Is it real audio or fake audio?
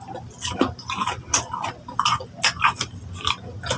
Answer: real